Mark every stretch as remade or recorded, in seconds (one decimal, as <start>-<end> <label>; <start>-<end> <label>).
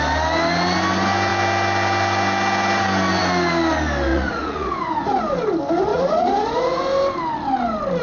0.0-4.1 recorded; 4.1-5.2 remade; 5.2-5.9 recorded; 5.9-6.8 remade; 6.8-8.0 recorded